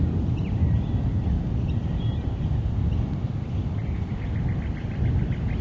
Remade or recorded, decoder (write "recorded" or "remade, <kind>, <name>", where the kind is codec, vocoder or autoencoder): recorded